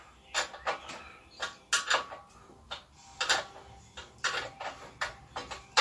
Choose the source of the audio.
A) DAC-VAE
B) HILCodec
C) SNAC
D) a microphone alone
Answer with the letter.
D